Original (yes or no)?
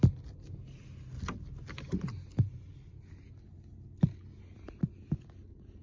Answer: yes